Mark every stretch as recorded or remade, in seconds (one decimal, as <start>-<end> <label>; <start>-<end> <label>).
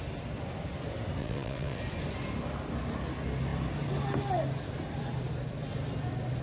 0.0-1.2 recorded; 1.2-1.8 remade; 1.8-6.4 recorded